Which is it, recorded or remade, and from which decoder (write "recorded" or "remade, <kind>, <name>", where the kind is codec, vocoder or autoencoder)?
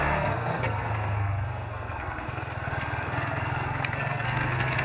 remade, codec, SNAC